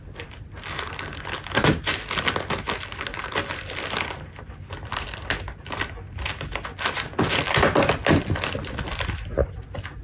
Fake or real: real